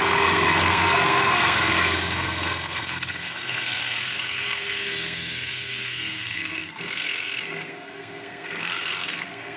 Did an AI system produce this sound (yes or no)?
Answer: yes